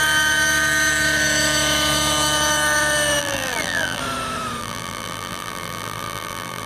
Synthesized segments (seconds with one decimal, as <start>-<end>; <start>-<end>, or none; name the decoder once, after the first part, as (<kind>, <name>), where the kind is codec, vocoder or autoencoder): 3.2-4.0 (vocoder, BigVGAN v2); 4.6-6.7